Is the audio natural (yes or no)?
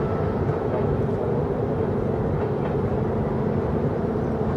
yes